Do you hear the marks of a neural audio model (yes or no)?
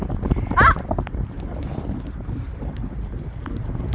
no